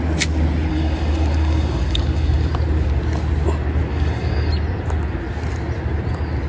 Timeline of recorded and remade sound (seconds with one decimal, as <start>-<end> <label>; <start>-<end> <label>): 0.0-0.7 recorded; 0.7-2.5 remade; 2.5-3.9 recorded; 3.9-4.5 remade; 4.5-6.5 recorded